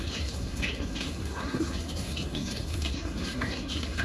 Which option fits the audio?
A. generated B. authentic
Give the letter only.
A